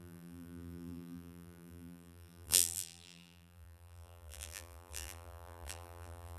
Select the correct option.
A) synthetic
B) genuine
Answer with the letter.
A